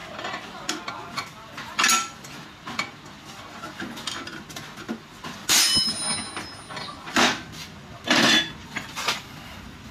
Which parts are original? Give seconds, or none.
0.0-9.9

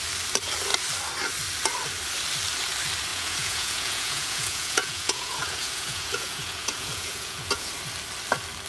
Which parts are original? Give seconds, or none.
0.0-3.1; 7.7-8.7